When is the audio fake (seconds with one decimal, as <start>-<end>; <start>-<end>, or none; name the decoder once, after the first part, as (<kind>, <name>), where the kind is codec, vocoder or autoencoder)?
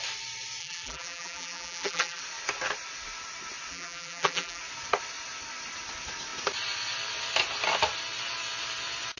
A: 0.6-2.2 (vocoder, BigVGAN v2); 3.7-4.6